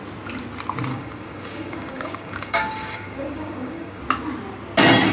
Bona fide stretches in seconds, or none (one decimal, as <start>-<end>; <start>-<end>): 0.0-0.9; 4.0-5.1